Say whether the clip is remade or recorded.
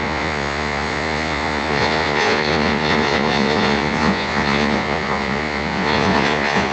remade